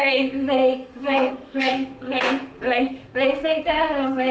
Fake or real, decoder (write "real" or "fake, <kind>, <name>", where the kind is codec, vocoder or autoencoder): fake, codec, SNAC